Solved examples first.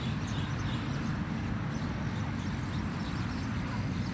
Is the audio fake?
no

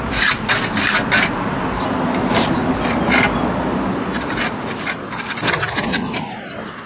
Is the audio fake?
no